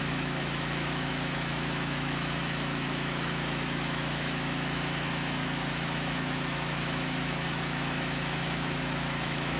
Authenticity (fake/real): fake